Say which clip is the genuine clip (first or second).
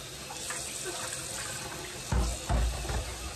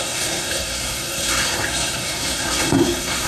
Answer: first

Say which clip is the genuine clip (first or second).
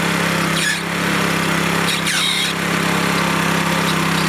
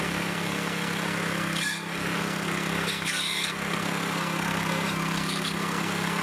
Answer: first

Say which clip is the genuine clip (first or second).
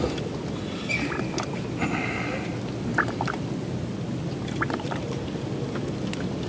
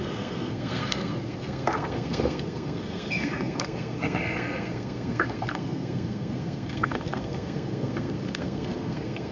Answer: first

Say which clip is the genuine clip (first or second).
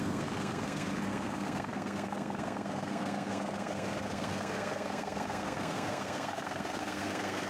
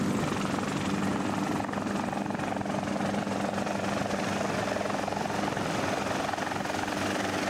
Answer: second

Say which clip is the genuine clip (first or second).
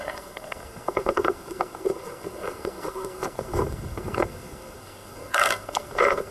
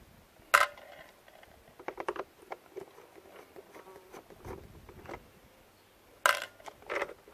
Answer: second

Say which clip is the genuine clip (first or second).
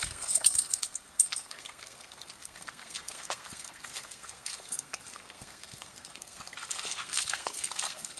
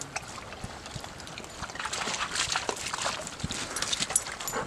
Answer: second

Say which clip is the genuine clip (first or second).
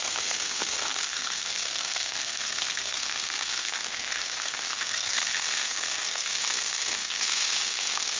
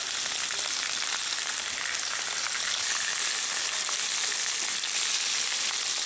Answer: second